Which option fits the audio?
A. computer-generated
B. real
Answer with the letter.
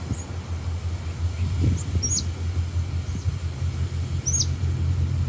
B